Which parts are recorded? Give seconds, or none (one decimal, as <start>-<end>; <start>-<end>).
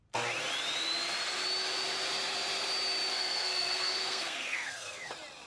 0.0-3.1; 5.1-5.5